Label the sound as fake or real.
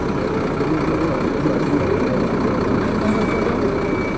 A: real